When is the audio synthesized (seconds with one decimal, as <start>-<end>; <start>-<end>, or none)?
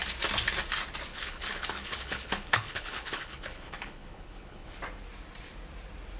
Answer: 1.1-4.8